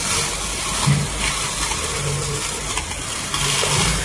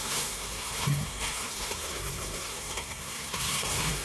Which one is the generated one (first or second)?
second